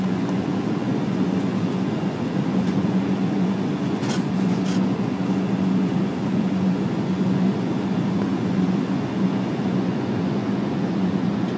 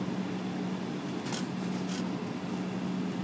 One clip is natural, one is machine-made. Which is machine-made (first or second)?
first